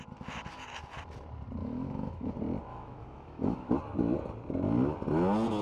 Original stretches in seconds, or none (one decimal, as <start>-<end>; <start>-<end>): 0.0-1.6; 2.3-2.7; 3.7-5.6